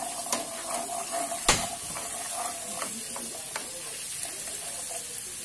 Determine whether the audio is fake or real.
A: real